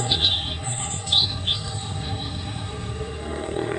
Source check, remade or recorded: remade